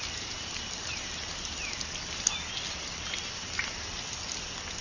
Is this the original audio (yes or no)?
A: yes